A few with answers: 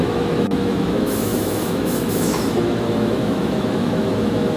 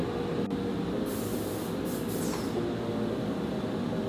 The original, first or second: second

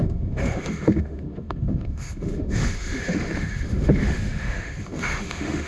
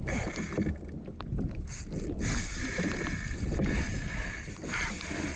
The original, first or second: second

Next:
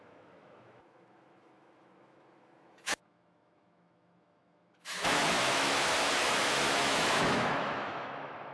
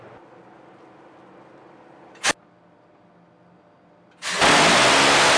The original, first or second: second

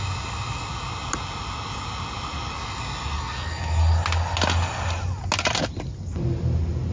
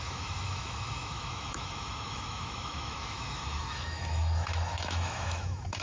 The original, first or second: first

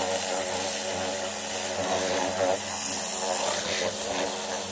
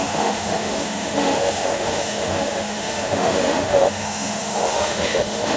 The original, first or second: first